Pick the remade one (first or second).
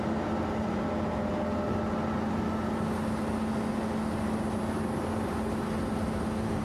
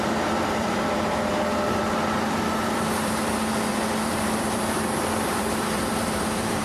second